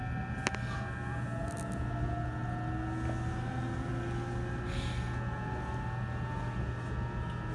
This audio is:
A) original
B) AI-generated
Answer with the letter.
A